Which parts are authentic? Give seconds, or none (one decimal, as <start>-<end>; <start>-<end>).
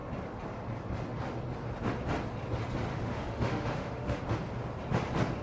0.0-2.9; 4.2-5.4